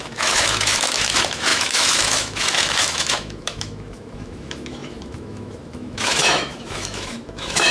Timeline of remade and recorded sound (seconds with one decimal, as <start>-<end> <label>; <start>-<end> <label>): 0.0-7.7 remade